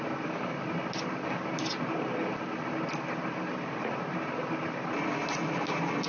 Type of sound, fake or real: real